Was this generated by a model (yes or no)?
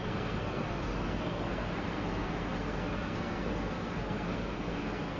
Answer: yes